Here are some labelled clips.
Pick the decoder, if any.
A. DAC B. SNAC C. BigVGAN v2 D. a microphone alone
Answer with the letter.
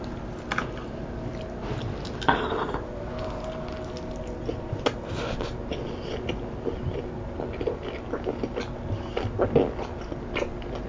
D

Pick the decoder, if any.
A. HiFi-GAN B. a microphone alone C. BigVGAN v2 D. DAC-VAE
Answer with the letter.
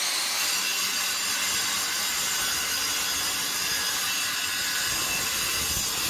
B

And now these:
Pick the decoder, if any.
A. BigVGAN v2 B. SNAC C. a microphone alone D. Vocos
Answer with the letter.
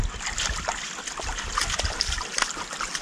A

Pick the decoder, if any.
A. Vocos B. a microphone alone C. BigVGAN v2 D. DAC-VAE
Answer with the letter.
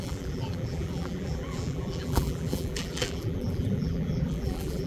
C